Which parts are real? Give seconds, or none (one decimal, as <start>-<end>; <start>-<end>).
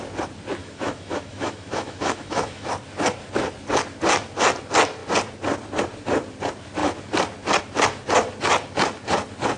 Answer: 0.0-0.6; 2.7-9.6